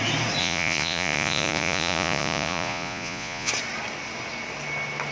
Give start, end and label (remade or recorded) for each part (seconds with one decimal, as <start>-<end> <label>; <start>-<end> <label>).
0.0-0.4 recorded; 0.4-3.5 remade; 3.5-5.1 recorded